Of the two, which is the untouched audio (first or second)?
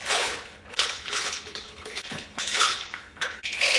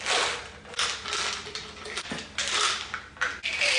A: second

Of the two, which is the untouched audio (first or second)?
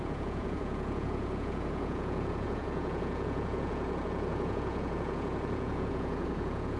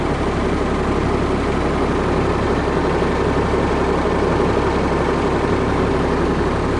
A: second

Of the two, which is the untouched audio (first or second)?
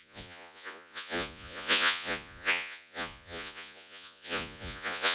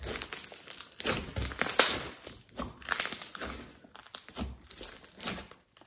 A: second